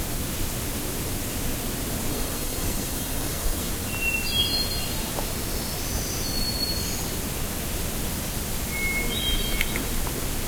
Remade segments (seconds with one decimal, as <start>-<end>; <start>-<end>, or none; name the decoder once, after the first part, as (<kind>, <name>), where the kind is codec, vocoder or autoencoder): 2.1-3.7 (codec, SNAC)